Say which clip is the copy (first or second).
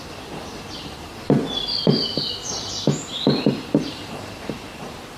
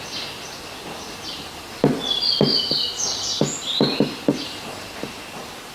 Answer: first